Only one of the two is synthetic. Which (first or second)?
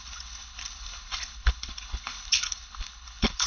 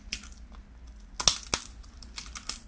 first